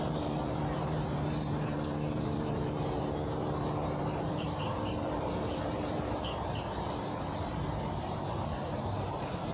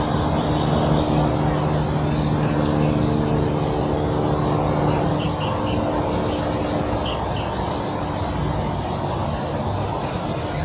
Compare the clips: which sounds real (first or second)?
second